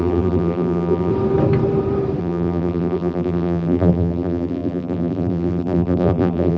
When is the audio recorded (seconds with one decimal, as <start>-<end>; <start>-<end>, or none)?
1.1-2.2